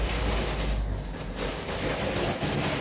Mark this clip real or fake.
real